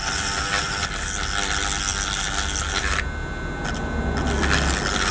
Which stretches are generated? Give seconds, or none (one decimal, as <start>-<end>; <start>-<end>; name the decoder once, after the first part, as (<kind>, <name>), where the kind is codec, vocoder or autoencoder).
none